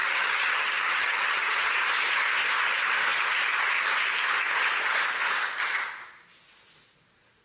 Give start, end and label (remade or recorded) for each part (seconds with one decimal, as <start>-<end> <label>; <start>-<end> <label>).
0.0-1.6 remade; 1.6-7.4 recorded

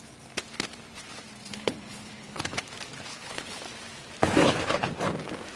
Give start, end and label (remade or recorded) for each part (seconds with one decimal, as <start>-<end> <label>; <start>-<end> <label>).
0.0-1.5 recorded; 1.5-2.6 remade; 2.6-3.1 recorded; 3.1-3.6 remade; 3.6-4.4 recorded; 4.4-4.9 remade; 4.9-5.6 recorded

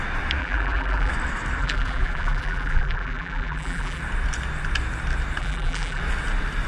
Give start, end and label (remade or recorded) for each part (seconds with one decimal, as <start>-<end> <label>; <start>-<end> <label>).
0.0-0.4 recorded; 0.4-1.1 remade; 1.1-1.6 recorded; 1.6-4.0 remade; 4.0-5.4 recorded; 5.4-6.0 remade; 6.0-6.7 recorded